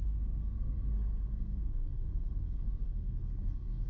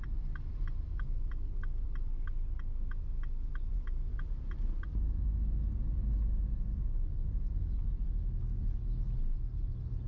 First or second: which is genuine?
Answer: second